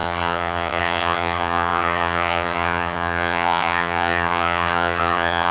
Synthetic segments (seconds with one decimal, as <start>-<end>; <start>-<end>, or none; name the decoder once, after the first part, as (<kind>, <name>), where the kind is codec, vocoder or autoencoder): 0.0-5.5 (vocoder, HiFi-GAN)

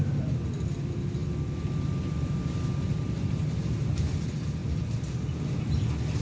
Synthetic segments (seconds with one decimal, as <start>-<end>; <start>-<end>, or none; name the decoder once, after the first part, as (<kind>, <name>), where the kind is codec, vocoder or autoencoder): none

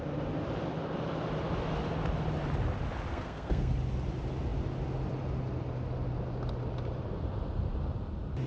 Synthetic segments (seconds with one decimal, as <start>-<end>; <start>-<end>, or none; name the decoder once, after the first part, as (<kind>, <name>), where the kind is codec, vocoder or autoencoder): 3.1-3.7 (codec, SNAC)

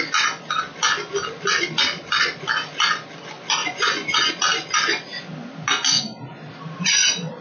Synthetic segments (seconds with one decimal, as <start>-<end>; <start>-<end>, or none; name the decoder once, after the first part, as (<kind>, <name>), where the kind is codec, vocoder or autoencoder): 3.6-4.3 (vocoder, Vocos)